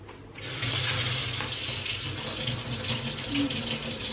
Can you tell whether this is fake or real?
real